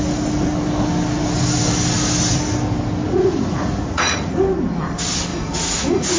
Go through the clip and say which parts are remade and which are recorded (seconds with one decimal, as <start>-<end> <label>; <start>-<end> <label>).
0.0-3.0 recorded; 3.0-4.3 remade; 4.3-5.3 recorded; 5.3-6.2 remade